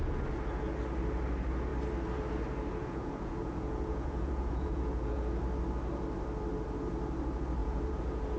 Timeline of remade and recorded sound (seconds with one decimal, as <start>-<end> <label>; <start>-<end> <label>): 0.0-2.8 recorded; 2.8-5.4 remade; 5.4-7.6 recorded; 7.6-8.4 remade